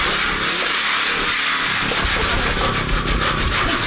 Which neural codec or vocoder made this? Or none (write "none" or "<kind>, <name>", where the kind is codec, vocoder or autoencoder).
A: none